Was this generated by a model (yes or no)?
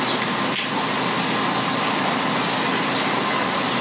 no